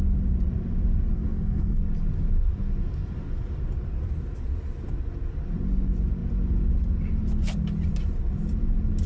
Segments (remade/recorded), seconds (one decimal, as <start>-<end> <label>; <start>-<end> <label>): 0.0-1.1 recorded; 1.1-1.8 remade; 1.8-9.1 recorded